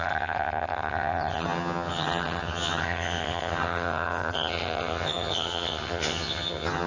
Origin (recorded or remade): remade